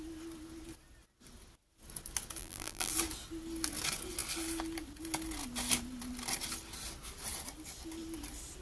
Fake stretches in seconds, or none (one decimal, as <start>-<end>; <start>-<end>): 2.4-2.9